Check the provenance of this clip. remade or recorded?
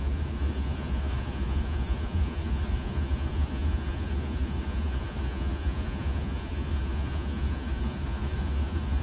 remade